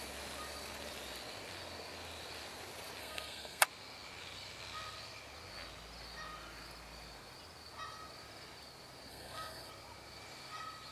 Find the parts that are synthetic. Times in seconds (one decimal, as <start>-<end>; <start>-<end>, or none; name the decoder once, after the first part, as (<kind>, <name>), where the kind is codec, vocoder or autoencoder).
3.0-3.6 (codec, SNAC); 9.1-9.7